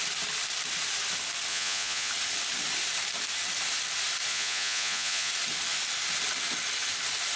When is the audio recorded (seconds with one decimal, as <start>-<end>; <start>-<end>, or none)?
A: 0.0-1.5; 2.1-4.3; 5.3-7.4